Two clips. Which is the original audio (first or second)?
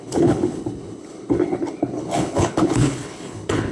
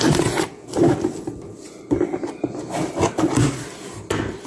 second